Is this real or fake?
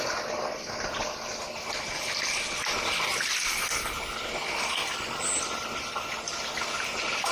real